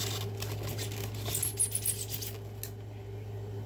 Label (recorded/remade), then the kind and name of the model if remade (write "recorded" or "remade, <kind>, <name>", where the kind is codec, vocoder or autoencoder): recorded